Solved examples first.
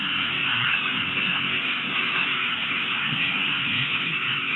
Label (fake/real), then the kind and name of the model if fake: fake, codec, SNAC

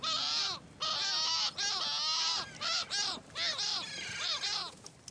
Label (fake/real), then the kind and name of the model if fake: real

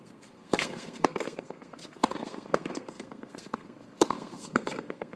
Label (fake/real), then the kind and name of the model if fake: fake, codec, SNAC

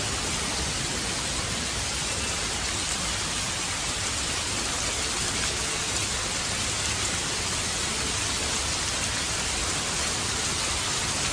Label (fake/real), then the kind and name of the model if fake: real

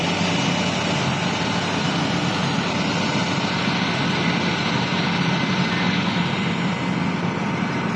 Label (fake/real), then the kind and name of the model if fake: real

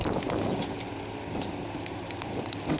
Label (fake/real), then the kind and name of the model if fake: real